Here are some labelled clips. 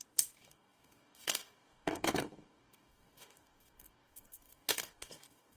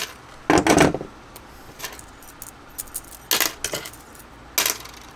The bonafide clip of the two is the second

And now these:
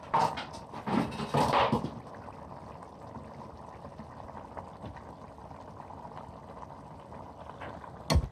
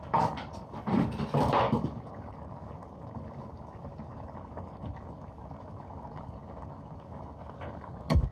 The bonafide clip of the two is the first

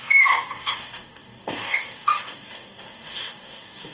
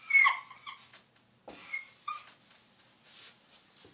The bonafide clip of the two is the second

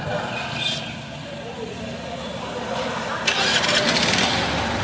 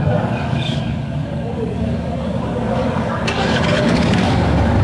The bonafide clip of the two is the first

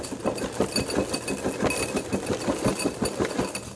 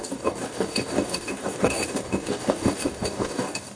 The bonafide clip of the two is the first